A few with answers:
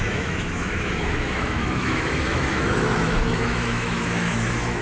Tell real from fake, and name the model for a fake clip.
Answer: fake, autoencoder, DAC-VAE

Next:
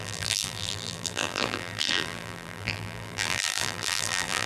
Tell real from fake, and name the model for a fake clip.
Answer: fake, vocoder, BigVGAN v2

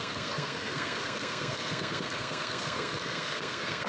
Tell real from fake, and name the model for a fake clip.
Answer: fake, codec, SNAC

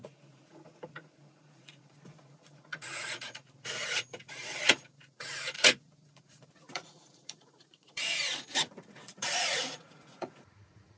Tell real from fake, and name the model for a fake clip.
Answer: fake, vocoder, Vocos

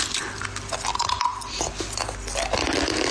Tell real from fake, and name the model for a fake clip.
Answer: real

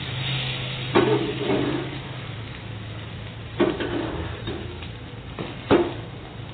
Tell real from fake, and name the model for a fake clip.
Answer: real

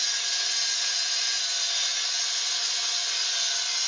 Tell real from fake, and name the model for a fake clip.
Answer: real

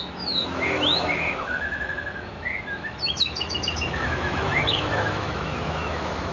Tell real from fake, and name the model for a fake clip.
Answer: fake, autoencoder, DAC-VAE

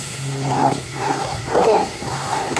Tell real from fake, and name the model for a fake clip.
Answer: fake, codec, SNAC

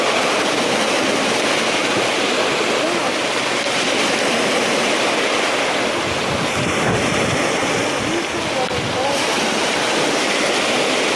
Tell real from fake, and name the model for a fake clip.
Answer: real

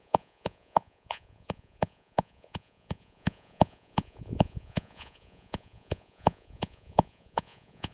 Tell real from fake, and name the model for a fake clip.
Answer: fake, vocoder, Vocos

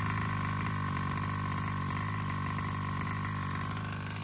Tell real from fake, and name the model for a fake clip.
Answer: real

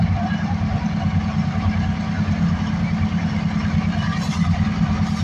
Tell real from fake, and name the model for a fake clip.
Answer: real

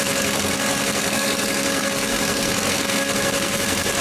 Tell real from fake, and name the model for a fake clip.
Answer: fake, codec, SNAC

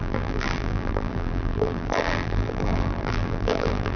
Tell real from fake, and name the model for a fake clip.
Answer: fake, vocoder, BigVGAN v2